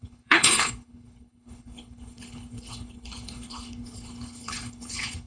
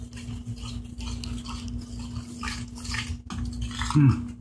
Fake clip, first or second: first